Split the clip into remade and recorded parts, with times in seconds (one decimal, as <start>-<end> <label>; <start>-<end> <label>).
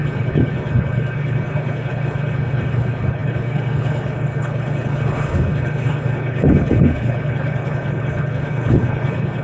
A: 0.0-9.4 remade